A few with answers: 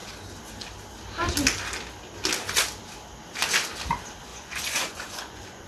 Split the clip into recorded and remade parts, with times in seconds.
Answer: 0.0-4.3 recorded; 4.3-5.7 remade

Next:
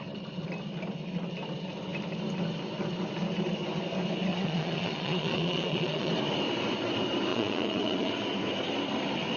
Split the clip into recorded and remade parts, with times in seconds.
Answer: 0.0-4.3 recorded; 4.3-6.1 remade; 6.1-7.3 recorded; 7.3-8.1 remade; 8.1-9.4 recorded

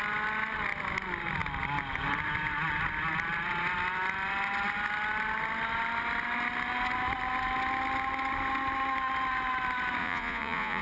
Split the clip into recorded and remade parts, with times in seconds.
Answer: 0.0-10.0 recorded; 10.0-10.8 remade

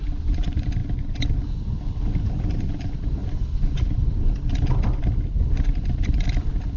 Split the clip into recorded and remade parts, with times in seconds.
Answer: 0.0-6.8 recorded

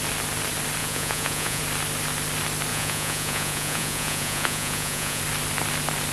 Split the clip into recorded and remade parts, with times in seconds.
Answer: 0.0-0.8 recorded; 0.8-1.6 remade; 1.6-2.7 recorded; 2.7-5.2 remade; 5.2-6.1 recorded

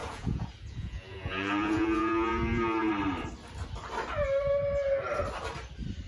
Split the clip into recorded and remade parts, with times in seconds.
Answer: 0.0-2.9 remade; 2.9-6.1 recorded

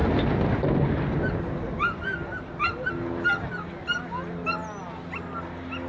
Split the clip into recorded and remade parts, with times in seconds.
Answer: 0.0-5.9 recorded

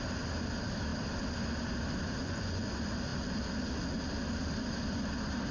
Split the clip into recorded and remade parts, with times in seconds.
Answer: 0.0-2.2 recorded; 2.2-2.7 remade; 2.7-5.5 recorded